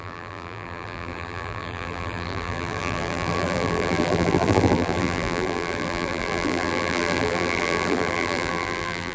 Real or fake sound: fake